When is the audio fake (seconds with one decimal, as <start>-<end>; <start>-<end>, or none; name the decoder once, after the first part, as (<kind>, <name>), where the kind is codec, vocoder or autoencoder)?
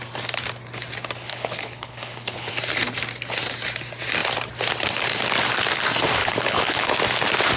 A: 1.3-2.5 (codec, HILCodec); 6.2-6.9